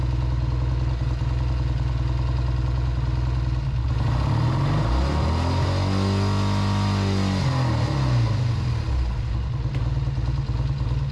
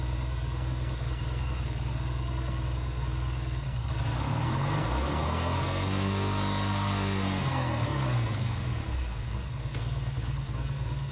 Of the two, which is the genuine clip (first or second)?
first